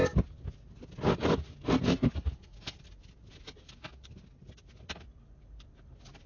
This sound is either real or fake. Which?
real